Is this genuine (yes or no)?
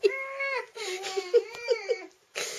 no